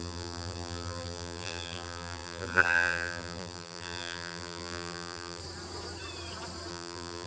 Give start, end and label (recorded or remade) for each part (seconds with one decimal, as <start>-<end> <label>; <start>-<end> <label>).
0.0-5.4 remade; 5.4-6.7 recorded; 6.7-7.3 remade